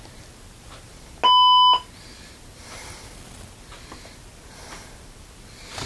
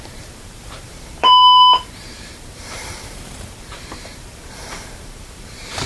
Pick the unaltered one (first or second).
first